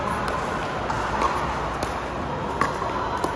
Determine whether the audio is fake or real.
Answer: real